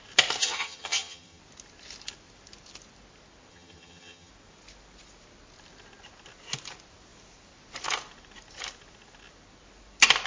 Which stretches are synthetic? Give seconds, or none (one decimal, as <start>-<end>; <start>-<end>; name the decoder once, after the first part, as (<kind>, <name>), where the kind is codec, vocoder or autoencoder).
0.4-1.4 (vocoder, HiFi-GAN); 3.5-4.3